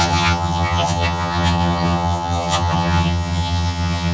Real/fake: fake